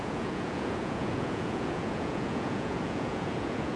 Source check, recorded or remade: remade